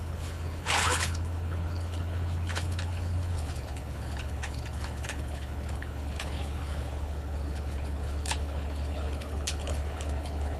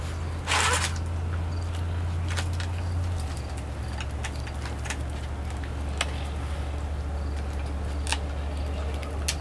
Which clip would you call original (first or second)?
second